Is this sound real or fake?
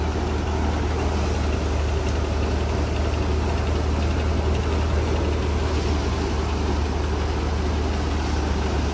real